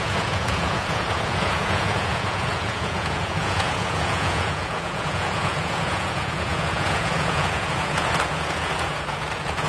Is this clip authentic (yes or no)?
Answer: no